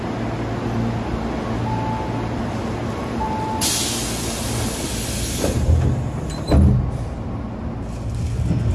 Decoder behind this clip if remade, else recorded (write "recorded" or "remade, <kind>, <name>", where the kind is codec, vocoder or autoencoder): recorded